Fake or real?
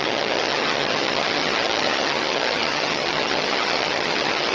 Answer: fake